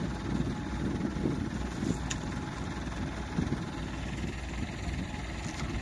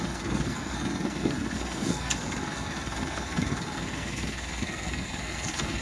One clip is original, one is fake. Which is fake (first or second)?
second